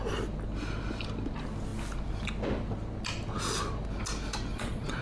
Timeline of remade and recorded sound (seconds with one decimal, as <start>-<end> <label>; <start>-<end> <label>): 0.0-4.5 recorded; 4.5-5.0 remade